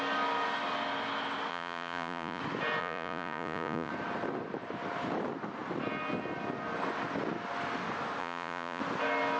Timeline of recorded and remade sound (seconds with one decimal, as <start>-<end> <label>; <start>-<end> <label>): 0.0-1.5 recorded; 1.5-2.4 remade; 2.4-2.8 recorded; 2.8-3.9 remade; 3.9-8.2 recorded; 8.2-8.8 remade; 8.8-9.4 recorded